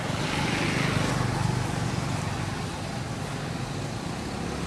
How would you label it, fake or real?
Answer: real